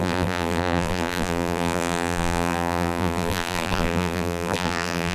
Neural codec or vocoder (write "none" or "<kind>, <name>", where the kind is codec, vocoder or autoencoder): vocoder, BigVGAN v2